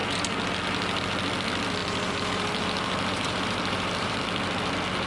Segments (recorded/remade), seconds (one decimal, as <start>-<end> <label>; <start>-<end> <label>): 0.0-1.8 recorded; 1.8-4.2 remade; 4.2-5.1 recorded